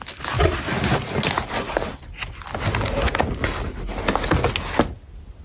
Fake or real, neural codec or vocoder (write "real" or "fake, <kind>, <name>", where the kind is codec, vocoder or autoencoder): real